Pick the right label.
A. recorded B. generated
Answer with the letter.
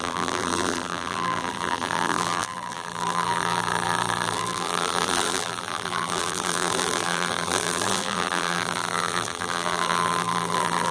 B